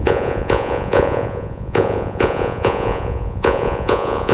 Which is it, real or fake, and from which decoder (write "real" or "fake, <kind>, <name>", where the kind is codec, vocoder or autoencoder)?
fake, vocoder, Vocos